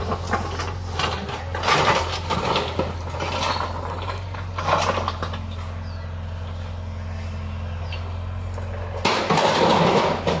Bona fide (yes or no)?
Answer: yes